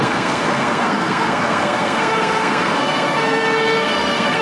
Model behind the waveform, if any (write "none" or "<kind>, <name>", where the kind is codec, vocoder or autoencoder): codec, SNAC